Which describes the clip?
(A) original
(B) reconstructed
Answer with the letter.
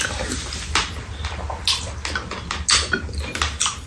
A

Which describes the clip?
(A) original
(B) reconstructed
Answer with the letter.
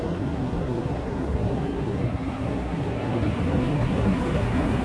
B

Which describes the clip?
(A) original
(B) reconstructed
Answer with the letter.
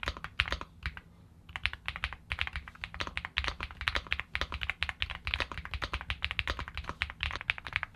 A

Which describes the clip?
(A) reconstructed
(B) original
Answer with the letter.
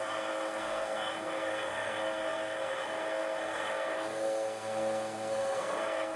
A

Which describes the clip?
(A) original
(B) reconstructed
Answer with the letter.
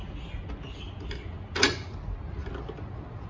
A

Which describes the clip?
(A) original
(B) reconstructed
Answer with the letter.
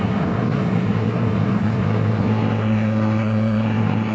B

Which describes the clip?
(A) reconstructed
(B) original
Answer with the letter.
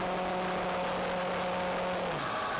B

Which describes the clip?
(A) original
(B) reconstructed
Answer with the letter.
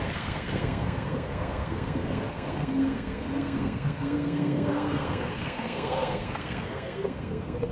B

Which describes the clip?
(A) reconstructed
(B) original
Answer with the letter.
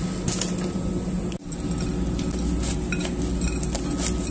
B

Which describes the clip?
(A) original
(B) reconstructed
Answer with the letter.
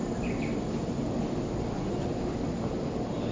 A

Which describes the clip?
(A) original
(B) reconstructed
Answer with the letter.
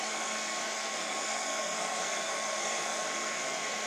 B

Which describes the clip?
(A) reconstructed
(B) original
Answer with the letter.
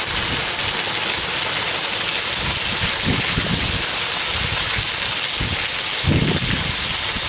B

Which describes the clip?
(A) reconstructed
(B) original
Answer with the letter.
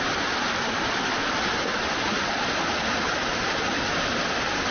B